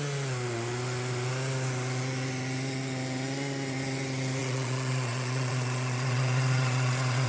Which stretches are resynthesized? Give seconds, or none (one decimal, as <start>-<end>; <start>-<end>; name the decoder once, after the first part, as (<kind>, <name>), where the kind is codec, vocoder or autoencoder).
4.4-7.3 (vocoder, Vocos)